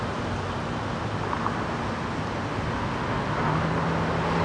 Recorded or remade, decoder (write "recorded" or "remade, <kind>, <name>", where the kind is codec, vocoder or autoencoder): recorded